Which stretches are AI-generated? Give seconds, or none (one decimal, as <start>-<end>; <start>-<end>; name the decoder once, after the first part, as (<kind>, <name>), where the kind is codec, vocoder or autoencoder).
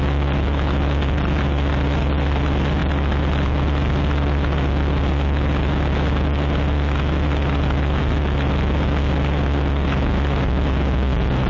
none